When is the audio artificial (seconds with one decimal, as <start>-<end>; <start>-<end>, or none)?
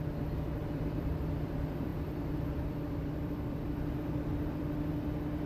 0.0-5.5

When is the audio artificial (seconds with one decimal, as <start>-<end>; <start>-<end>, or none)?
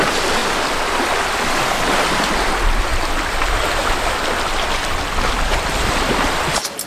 2.9-6.0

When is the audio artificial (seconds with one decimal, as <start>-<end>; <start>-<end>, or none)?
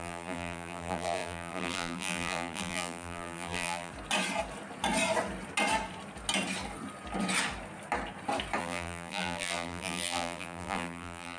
0.0-3.9; 8.6-11.4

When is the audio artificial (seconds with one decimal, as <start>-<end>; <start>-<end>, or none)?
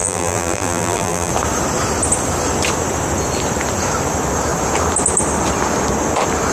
0.0-1.3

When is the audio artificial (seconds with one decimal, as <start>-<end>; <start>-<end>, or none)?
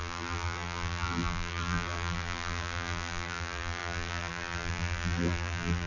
0.0-5.9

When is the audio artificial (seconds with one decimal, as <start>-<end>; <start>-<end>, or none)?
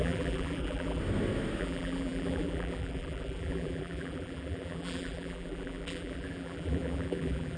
0.0-1.0; 1.6-7.6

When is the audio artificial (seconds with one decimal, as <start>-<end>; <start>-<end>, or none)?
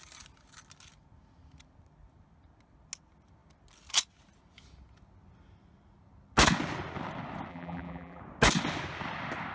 7.5-8.2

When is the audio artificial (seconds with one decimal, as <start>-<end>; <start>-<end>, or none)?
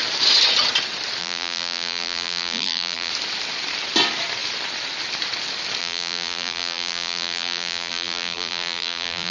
1.2-3.1; 5.8-9.3